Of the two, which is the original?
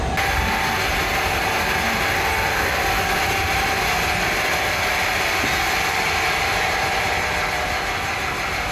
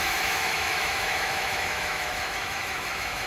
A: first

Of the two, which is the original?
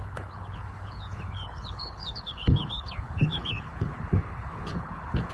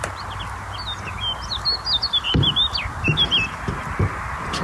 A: second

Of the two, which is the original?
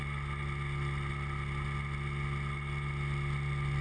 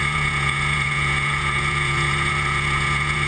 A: first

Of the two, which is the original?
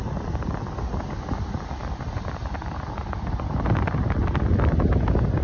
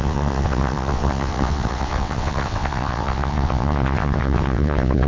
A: first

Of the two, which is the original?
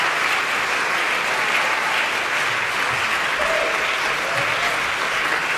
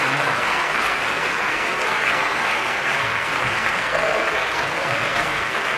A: first